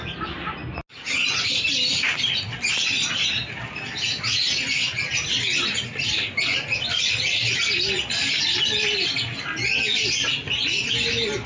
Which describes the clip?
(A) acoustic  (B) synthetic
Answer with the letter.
A